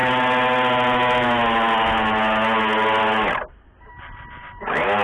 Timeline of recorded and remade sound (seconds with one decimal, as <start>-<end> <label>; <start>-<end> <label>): 0.0-5.0 recorded